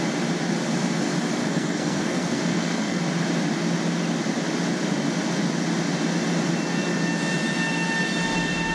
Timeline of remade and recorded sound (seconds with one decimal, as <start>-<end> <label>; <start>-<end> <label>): 0.0-1.4 recorded; 1.4-3.0 remade; 3.0-8.7 recorded

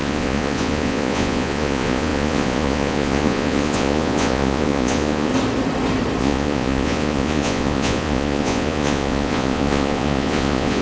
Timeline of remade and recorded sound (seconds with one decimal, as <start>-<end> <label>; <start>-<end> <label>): 0.0-5.3 remade; 5.3-6.2 recorded; 6.2-10.8 remade

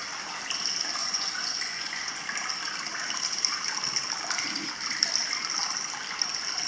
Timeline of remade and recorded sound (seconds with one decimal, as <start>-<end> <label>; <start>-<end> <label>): 0.0-1.0 recorded; 1.0-2.1 remade; 2.1-6.7 recorded

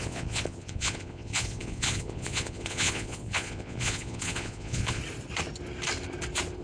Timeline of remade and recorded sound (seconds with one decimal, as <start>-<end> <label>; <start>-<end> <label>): 0.0-5.0 remade; 5.0-6.6 recorded

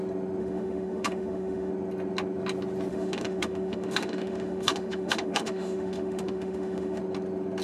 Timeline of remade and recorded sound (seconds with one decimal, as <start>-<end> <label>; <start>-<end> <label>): 0.0-0.4 recorded; 0.4-1.7 remade; 1.7-2.9 recorded; 2.9-7.0 remade; 7.0-7.6 recorded

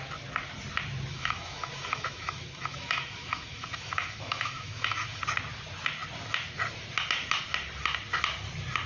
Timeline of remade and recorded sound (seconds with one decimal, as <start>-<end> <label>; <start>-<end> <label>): 0.0-1.1 recorded; 1.1-5.2 remade; 5.2-8.9 recorded

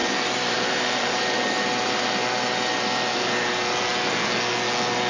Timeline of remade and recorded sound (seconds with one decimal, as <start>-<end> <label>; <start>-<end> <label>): 0.0-2.5 remade; 2.5-5.1 recorded